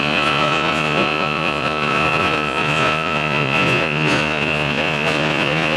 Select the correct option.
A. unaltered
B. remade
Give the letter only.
B